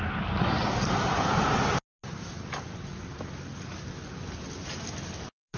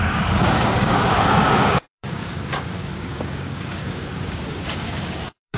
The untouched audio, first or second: first